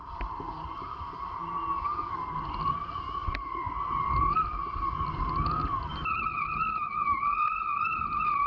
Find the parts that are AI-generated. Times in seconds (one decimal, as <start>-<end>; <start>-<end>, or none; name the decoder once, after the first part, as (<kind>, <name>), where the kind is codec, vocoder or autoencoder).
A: none